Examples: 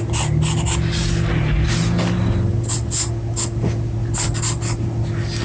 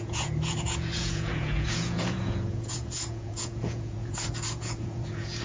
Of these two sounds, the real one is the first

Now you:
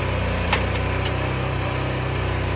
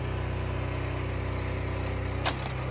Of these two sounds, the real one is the second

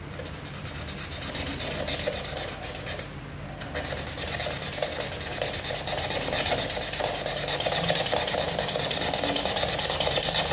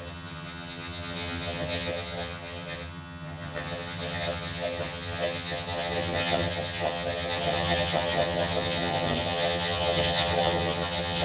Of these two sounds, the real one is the first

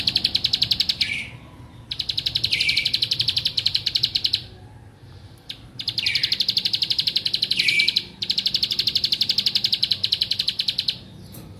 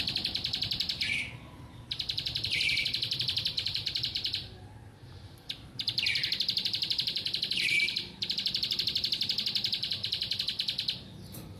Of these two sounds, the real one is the first